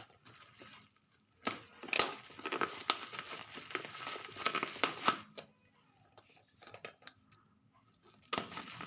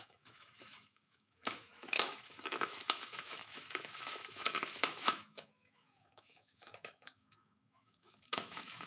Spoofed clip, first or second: second